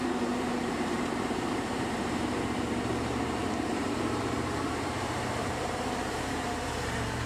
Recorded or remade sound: remade